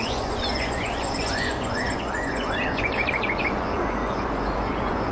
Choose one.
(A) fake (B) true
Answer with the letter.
A